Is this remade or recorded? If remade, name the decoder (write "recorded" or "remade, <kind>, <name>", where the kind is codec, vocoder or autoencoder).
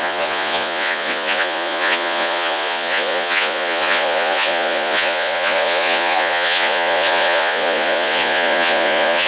remade, vocoder, Vocos